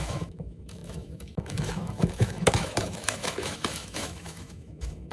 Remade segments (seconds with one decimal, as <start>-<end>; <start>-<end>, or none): 0.0-5.1